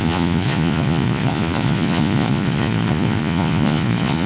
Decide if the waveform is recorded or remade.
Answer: remade